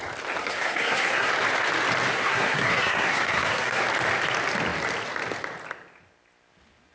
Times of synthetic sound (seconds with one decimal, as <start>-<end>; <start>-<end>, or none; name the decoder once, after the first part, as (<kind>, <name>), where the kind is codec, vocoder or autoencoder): 0.4-1.3 (codec, SNAC); 2.1-3.8